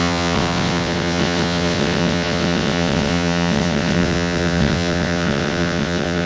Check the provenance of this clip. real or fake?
fake